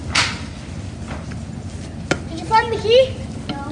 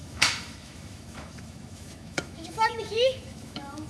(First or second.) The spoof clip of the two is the second